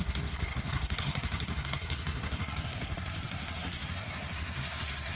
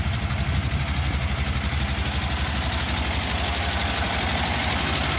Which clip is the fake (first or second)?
first